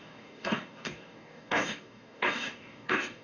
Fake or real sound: fake